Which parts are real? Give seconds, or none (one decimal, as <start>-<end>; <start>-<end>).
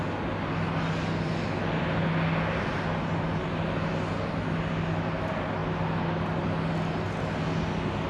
0.0-8.1